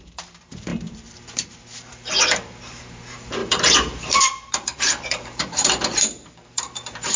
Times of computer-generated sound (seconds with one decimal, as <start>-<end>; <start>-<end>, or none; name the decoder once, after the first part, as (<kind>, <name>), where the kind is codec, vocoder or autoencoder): 0.0-7.2 (vocoder, BigVGAN v2)